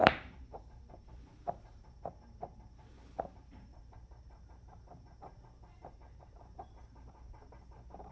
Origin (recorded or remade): remade